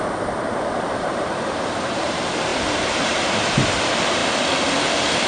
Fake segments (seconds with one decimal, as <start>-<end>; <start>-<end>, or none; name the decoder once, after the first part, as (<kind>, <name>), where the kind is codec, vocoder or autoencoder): 0.0-4.2 (vocoder, BigVGAN v2); 4.8-5.3